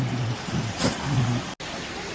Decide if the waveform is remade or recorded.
recorded